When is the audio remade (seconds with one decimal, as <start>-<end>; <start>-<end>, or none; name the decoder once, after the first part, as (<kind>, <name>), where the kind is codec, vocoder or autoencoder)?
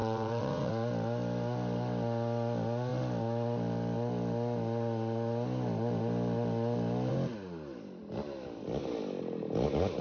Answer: 0.0-0.7 (vocoder, WaveNeXt)